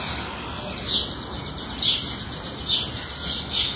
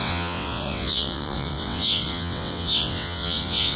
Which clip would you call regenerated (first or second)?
second